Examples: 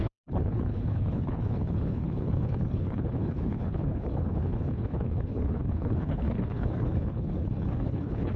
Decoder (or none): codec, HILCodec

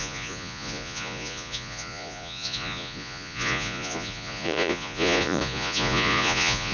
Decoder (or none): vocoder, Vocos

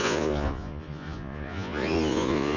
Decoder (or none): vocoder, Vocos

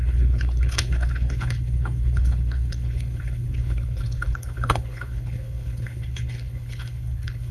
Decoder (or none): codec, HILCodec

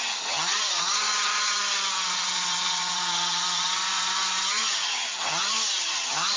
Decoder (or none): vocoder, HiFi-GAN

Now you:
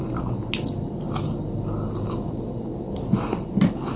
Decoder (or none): none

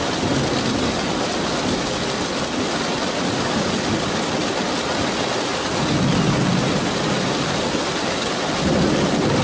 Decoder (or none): none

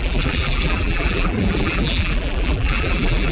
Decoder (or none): vocoder, BigVGAN v2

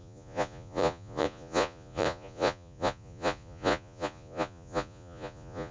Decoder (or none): vocoder, Vocos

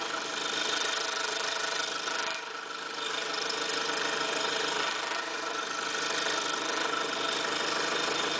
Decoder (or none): vocoder, BigVGAN v2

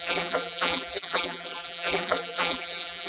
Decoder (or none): vocoder, BigVGAN v2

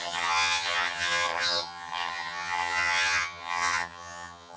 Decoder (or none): vocoder, HiFi-GAN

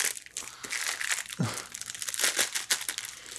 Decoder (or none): none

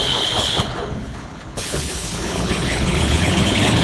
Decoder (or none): codec, HILCodec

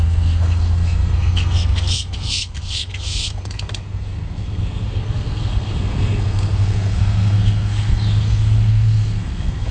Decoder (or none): codec, SNAC